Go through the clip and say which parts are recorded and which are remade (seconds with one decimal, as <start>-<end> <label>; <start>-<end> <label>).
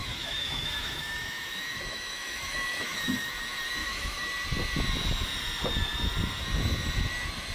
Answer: 0.0-3.3 remade; 3.3-3.8 recorded; 3.8-4.3 remade; 4.3-7.5 recorded